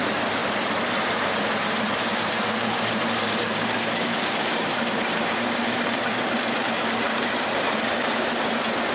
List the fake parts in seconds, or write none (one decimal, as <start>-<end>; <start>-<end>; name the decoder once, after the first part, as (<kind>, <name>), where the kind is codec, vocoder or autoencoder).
0.0-0.4 (vocoder, BigVGAN v2); 1.2-8.9